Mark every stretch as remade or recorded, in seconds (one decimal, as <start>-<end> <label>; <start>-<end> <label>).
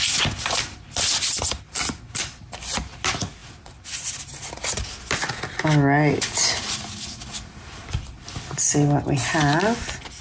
0.0-10.2 recorded